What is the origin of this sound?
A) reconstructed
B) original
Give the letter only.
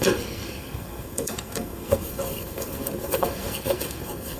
A